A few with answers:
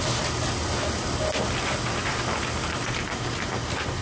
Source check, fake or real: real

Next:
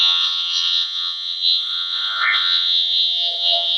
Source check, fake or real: fake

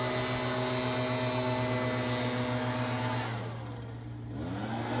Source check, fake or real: real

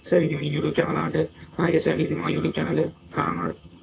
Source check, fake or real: fake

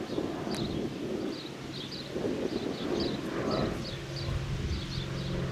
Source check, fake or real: real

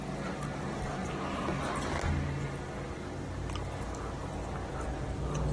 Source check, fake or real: real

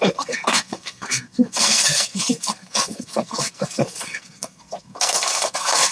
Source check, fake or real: fake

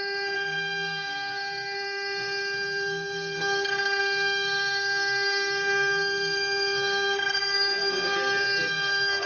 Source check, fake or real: fake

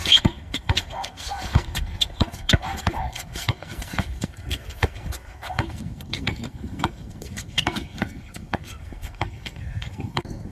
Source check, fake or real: fake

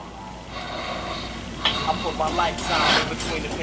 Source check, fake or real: real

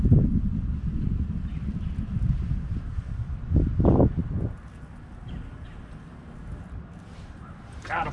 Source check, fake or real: real